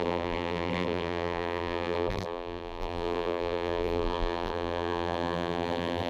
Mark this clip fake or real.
fake